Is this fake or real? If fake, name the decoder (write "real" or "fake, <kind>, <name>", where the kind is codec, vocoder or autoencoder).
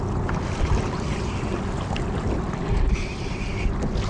real